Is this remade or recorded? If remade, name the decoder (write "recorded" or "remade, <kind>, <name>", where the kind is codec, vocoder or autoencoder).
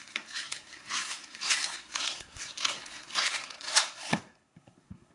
remade, codec, SNAC